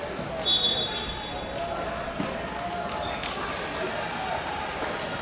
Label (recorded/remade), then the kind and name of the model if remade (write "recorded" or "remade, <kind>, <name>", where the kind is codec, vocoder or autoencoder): recorded